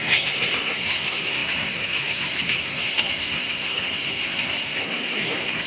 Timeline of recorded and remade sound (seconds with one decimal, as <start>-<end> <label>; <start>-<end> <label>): 0.0-5.7 remade